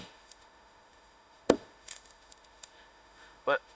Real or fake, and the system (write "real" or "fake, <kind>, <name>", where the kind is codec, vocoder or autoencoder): fake, autoencoder, DAC-VAE